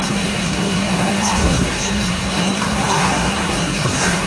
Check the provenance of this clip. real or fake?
fake